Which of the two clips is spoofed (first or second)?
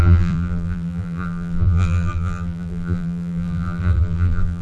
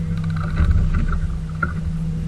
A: first